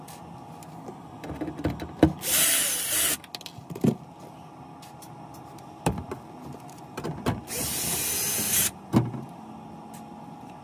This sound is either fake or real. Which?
real